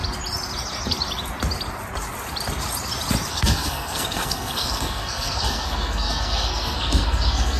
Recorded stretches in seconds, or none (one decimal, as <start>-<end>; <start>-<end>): 0.0-3.3